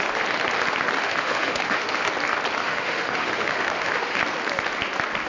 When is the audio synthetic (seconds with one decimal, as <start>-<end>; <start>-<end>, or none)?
1.0-2.1; 2.6-4.2